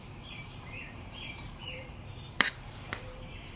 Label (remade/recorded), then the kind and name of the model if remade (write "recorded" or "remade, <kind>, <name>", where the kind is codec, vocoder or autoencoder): remade, vocoder, BigVGAN v2